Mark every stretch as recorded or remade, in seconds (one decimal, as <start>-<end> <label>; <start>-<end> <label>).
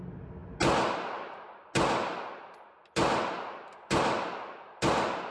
0.0-5.3 recorded